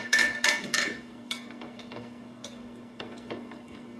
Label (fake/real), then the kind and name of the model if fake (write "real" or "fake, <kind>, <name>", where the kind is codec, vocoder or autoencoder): fake, codec, SNAC